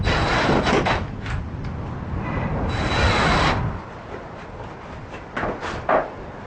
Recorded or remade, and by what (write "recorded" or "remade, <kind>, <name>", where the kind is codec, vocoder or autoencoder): recorded